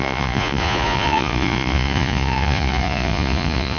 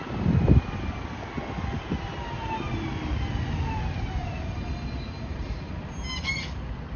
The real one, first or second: second